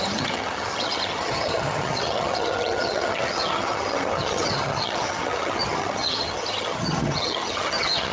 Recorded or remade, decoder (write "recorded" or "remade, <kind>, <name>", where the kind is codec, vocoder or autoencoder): remade, vocoder, HiFi-GAN